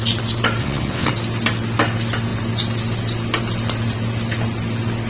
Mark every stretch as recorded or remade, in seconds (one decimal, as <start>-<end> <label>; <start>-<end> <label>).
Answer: 0.0-0.6 recorded; 0.6-1.1 remade; 1.1-5.1 recorded